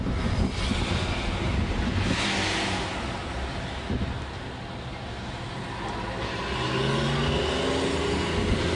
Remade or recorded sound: recorded